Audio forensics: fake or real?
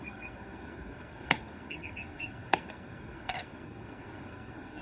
fake